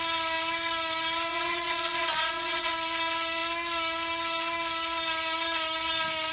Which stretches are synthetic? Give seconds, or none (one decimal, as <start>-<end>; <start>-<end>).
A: 1.3-2.7